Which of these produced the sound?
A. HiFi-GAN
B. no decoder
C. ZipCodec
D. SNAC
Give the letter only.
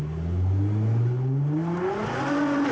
B